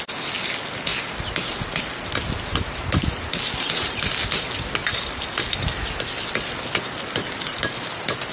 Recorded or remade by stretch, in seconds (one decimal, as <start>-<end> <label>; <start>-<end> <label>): 0.0-8.3 recorded